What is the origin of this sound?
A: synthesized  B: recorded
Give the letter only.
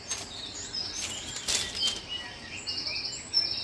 B